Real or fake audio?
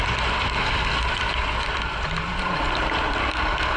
real